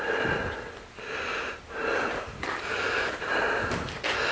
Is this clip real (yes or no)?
yes